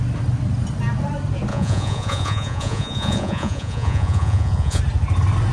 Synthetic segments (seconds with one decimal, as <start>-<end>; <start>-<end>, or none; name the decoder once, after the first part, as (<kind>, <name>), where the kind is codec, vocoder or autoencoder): 1.5-4.8 (vocoder, Vocos)